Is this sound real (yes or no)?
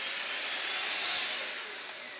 yes